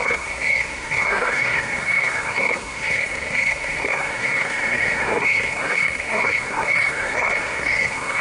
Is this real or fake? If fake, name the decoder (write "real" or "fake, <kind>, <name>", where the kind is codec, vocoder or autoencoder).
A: fake, codec, SNAC